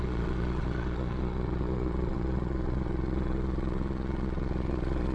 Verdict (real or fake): fake